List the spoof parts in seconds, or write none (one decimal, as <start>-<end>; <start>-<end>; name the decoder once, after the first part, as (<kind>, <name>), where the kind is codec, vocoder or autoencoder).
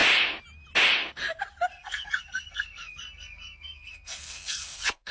1.7-5.1 (codec, SNAC)